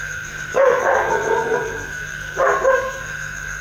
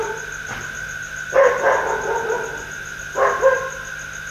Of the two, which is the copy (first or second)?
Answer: first